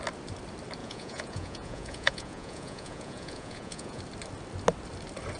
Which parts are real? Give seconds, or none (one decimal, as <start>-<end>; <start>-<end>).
0.0-0.8; 4.0-5.4